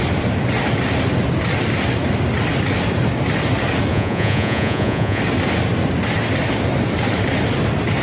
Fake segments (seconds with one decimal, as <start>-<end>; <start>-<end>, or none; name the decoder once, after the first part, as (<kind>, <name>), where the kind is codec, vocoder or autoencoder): 3.9-5.2 (vocoder, Vocos)